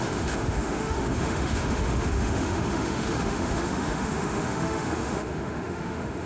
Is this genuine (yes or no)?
no